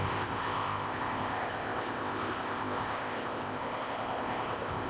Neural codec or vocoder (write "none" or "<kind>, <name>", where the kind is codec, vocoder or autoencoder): codec, ZipCodec